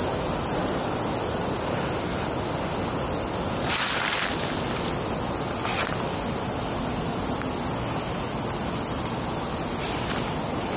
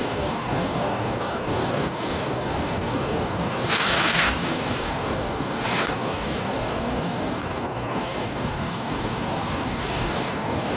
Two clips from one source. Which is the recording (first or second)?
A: first